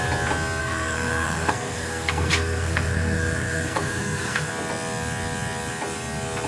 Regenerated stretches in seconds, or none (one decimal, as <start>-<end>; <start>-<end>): 0.6-4.5